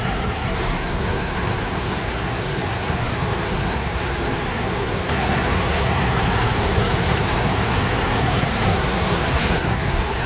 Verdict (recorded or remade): remade